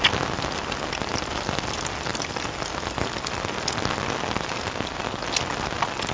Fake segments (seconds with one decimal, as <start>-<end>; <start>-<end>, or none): 2.1-2.7